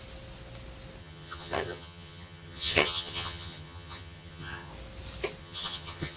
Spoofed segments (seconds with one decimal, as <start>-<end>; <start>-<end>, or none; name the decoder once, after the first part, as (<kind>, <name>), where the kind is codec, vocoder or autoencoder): 1.0-4.7 (vocoder, HiFi-GAN); 5.4-6.2